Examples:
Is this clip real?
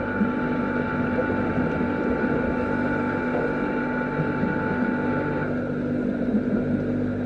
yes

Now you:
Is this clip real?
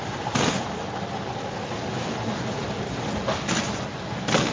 yes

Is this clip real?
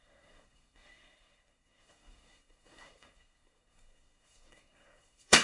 no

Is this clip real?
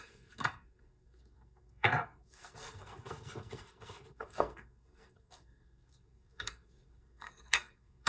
no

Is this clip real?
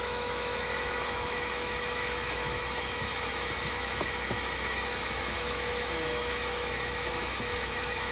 no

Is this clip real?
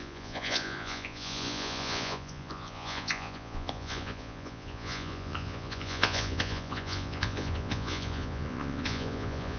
no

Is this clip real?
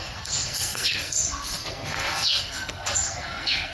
no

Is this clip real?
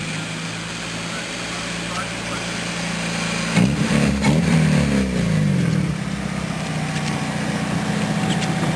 no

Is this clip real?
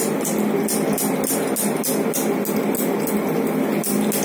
yes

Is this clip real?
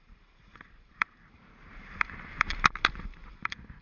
no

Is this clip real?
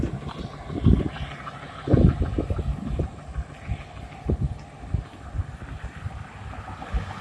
yes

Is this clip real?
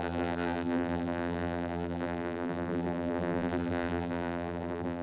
no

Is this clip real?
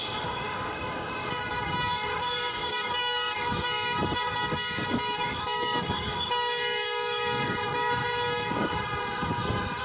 no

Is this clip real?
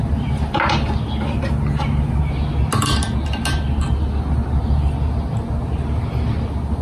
yes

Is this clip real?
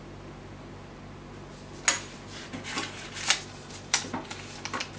yes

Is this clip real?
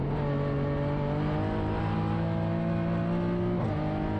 yes